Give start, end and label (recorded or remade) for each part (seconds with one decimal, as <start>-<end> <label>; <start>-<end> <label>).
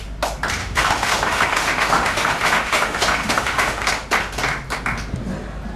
0.0-0.6 recorded; 0.6-3.9 remade; 3.9-5.8 recorded